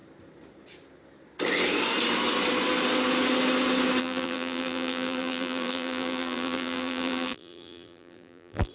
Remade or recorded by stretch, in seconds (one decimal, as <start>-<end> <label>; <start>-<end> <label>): 0.0-4.0 recorded; 4.0-8.7 remade